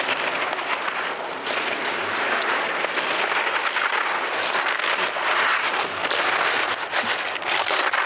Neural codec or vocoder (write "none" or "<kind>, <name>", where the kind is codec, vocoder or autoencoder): none